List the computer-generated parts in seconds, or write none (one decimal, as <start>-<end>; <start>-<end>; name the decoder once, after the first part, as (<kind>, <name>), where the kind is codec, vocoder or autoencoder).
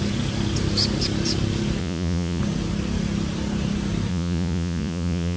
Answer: 1.8-2.4 (vocoder, Vocos); 4.1-5.4